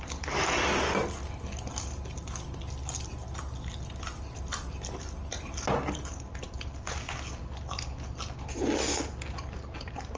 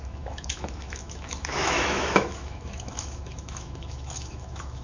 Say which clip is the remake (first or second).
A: second